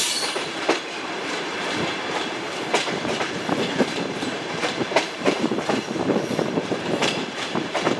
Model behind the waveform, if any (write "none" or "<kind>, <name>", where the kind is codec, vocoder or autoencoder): vocoder, BigVGAN v2